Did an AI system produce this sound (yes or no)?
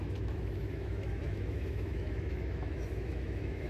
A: yes